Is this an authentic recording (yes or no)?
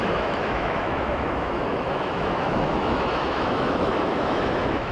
no